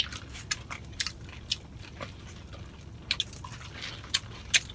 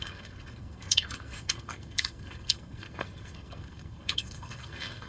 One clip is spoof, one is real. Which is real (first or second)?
first